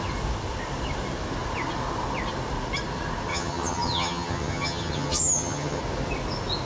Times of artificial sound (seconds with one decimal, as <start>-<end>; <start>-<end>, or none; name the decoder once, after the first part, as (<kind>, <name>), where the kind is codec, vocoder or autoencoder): 3.3-5.8 (vocoder, HiFi-GAN)